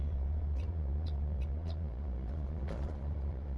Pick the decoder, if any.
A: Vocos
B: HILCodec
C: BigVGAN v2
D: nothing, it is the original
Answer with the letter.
A